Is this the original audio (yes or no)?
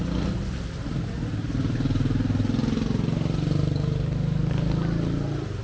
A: yes